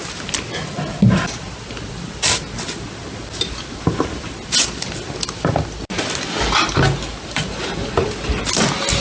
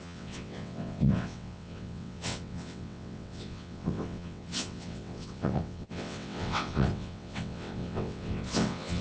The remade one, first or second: second